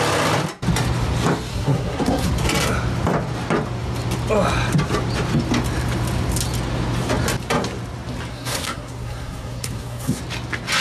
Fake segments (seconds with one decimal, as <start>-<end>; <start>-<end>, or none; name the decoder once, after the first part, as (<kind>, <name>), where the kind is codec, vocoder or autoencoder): 1.5-2.3 (codec, SNAC); 8.3-10.2